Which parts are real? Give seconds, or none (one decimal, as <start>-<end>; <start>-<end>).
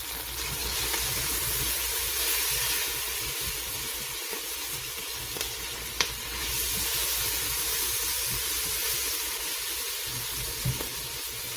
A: 0.0-11.6